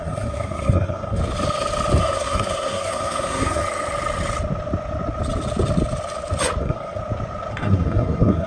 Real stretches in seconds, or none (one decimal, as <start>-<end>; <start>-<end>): 1.2-2.0; 3.6-6.6; 7.0-7.5